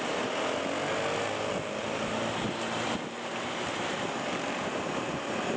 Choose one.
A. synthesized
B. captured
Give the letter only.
B